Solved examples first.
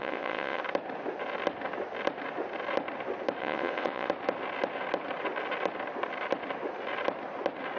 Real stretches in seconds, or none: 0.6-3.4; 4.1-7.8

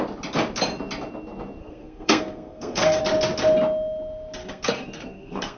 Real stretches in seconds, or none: 0.0-1.6; 3.0-4.4

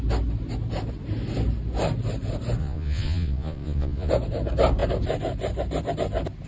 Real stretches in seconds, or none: 0.0-2.6; 4.1-6.5

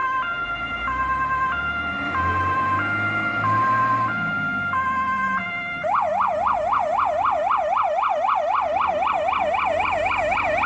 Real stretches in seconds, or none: 0.0-10.7

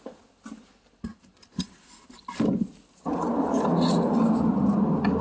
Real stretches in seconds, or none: 0.0-5.2

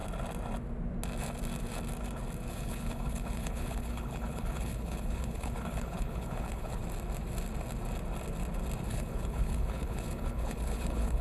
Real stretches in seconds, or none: 0.0-2.5; 6.8-8.9

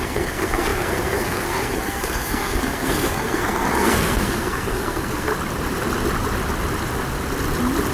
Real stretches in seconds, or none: 5.3-7.9